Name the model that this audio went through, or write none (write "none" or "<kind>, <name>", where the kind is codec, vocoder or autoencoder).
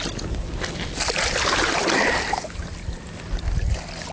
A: none